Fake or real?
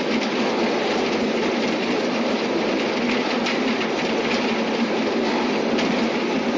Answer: real